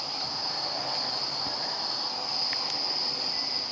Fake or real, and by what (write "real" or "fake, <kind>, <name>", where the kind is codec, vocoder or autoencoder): real